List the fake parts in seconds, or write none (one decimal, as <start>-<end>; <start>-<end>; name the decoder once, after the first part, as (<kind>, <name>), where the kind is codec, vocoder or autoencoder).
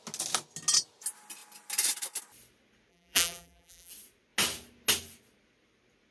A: 2.9-3.9 (vocoder, BigVGAN v2)